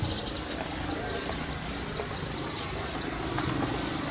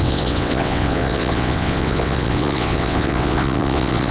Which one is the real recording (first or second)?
first